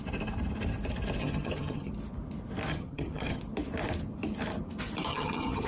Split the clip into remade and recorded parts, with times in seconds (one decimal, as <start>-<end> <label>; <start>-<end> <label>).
0.0-1.2 recorded; 1.2-1.9 remade; 1.9-2.7 recorded; 2.7-3.4 remade; 3.4-5.1 recorded; 5.1-5.7 remade